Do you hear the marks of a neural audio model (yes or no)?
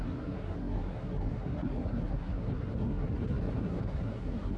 yes